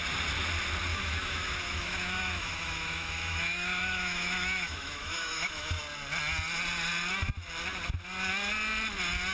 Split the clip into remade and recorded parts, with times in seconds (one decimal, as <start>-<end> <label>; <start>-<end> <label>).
0.0-0.9 recorded; 0.9-5.8 remade; 5.8-9.3 recorded